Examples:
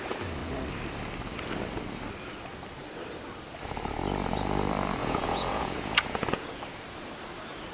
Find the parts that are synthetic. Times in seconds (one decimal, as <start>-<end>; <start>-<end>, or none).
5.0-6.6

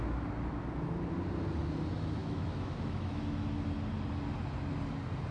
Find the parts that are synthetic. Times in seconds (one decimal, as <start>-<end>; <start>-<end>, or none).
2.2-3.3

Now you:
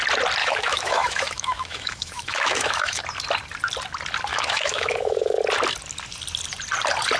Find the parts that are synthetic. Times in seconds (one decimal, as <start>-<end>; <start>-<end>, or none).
0.4-3.0; 4.3-5.4

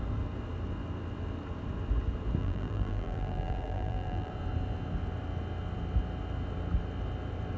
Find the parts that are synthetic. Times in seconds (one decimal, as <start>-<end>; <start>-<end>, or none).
2.4-4.3

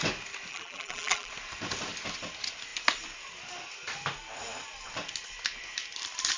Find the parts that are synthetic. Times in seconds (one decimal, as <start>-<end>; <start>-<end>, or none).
0.5-1.3

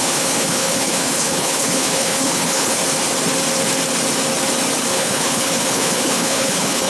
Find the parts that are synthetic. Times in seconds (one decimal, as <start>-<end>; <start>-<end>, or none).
0.0-2.8; 4.9-6.9